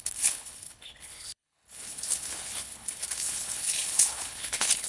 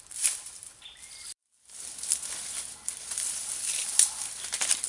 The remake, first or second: first